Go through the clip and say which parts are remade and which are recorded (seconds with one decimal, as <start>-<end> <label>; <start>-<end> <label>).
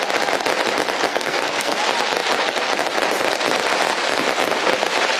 0.0-1.1 recorded; 1.1-1.8 remade; 1.8-5.2 recorded